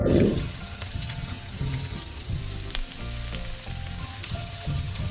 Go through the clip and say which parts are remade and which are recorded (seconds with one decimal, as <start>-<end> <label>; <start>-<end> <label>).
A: 0.0-2.4 remade; 2.4-4.0 recorded; 4.0-5.1 remade